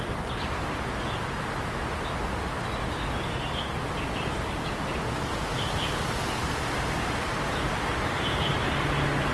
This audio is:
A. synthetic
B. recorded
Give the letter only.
B